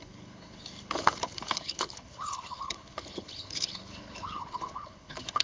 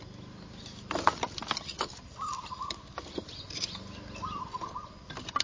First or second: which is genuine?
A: second